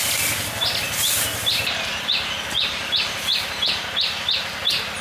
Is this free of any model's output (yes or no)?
yes